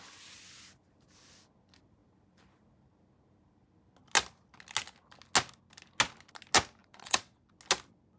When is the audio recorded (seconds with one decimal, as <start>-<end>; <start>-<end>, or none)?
0.0-6.8; 7.5-8.2